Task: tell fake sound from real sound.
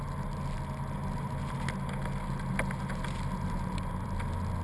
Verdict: real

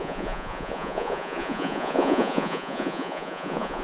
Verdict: fake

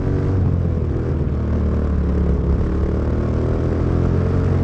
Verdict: real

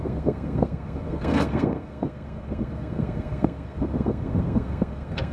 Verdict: fake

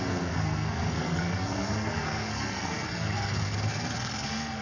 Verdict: fake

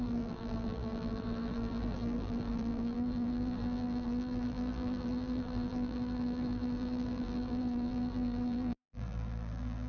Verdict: fake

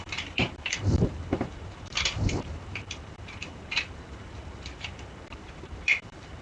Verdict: fake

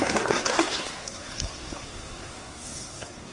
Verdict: fake